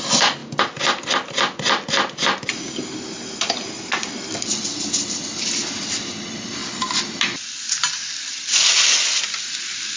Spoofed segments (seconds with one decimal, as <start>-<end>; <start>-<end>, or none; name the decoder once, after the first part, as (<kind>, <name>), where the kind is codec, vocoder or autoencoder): none